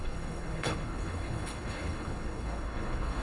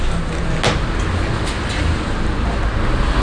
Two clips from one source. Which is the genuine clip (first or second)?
second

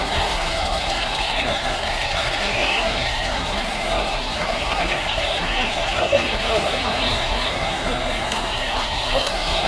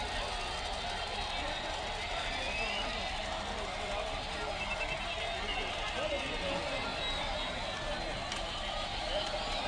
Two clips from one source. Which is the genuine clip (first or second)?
second